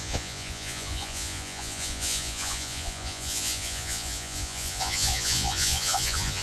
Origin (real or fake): fake